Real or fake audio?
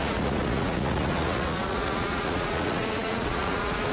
fake